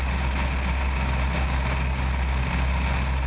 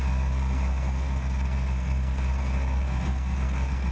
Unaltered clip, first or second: first